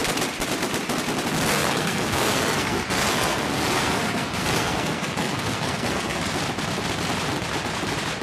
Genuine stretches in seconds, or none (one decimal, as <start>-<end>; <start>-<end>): 0.0-1.5; 6.4-8.2